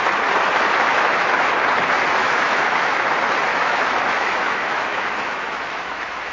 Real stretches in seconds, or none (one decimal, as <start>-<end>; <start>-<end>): 0.0-0.9; 1.4-2.2; 3.1-3.5